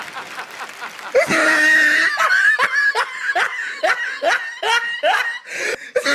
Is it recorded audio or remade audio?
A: recorded